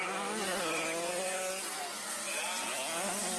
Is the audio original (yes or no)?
yes